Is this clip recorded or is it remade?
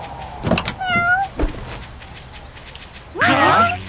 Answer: recorded